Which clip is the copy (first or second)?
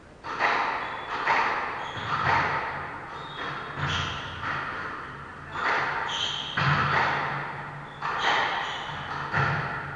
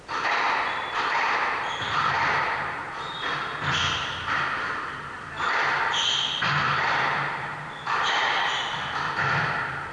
second